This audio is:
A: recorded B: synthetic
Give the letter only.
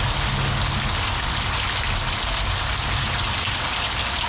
A